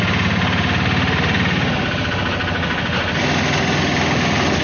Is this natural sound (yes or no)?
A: yes